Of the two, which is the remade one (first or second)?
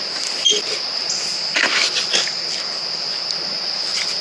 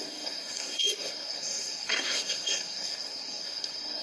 second